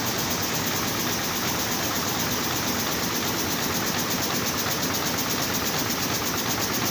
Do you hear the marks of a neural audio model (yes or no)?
no